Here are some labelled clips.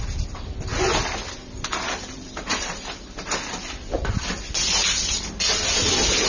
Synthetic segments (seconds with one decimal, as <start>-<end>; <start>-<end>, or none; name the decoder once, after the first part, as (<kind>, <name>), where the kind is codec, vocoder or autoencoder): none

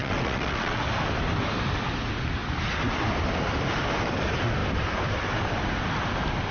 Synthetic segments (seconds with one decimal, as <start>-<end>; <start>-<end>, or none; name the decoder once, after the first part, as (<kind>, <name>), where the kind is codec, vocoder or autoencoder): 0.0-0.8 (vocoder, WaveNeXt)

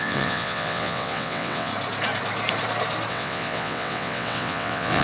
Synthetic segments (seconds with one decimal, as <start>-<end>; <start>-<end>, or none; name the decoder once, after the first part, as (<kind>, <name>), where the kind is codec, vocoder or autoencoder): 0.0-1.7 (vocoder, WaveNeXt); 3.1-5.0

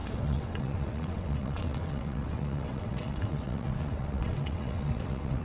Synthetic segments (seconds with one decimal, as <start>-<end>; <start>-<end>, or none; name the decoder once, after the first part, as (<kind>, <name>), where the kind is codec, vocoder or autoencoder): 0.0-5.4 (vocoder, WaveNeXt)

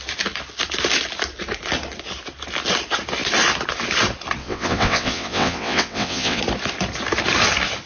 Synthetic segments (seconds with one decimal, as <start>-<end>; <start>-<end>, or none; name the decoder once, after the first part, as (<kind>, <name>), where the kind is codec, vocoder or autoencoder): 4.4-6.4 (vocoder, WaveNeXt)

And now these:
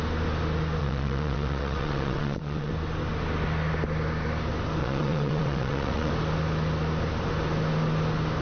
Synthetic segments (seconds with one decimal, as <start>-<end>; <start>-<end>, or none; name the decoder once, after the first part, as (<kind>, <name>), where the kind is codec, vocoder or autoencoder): 0.8-2.7 (vocoder, WaveNeXt); 4.8-6.1